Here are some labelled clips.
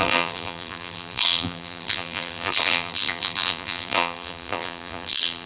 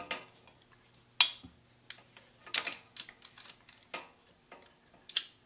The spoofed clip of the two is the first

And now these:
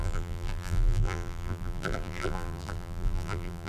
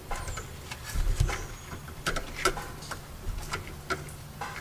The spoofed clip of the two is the first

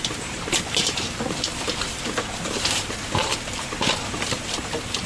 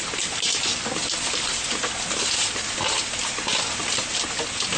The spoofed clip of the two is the first